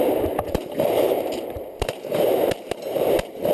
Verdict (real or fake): fake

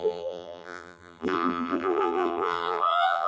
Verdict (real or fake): fake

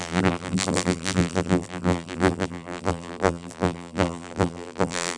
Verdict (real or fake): fake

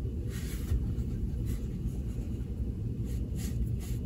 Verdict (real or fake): fake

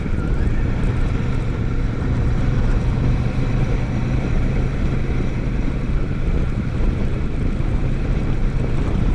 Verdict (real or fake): fake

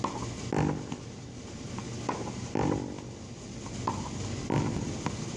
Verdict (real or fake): real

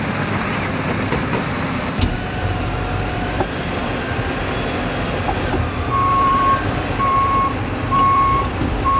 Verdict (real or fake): fake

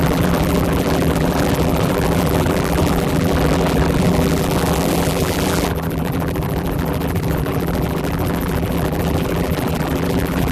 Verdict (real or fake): fake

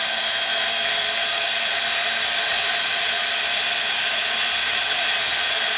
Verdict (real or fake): fake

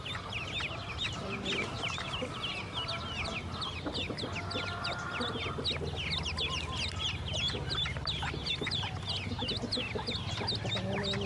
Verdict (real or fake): real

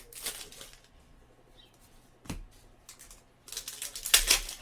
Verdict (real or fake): real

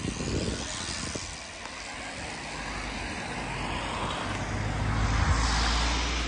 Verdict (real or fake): real